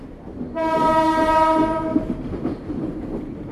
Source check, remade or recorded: recorded